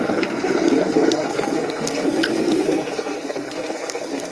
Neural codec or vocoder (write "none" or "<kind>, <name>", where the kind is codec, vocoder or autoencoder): codec, SNAC